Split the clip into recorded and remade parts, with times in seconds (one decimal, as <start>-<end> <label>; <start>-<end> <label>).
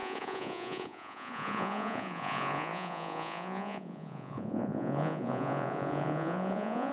0.0-6.9 remade